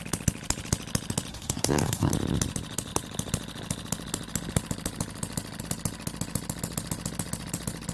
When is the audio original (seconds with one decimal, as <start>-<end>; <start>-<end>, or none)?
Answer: 0.0-1.3; 2.1-7.9